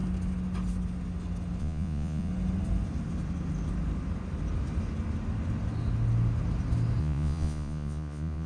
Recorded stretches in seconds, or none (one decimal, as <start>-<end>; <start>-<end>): 0.0-1.6; 2.3-7.0